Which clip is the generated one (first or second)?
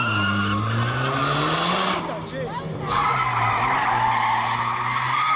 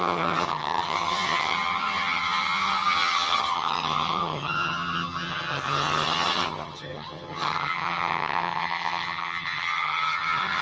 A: second